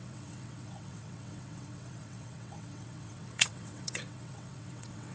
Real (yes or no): no